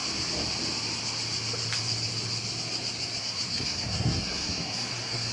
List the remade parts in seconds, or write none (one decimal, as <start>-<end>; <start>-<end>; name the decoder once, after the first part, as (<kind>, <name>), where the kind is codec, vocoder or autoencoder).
3.2-5.3 (codec, SNAC)